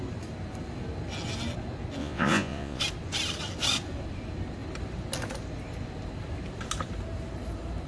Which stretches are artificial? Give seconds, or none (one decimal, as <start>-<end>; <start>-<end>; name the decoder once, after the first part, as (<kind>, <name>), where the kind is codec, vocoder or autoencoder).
2.0-2.8 (vocoder, Vocos)